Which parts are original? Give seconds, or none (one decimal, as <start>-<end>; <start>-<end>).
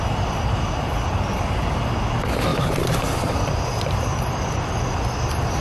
0.0-5.6